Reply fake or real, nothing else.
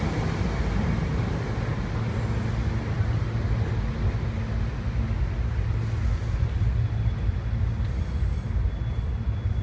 real